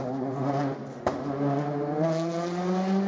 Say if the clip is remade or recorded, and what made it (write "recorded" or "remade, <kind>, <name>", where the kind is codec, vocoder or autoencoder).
recorded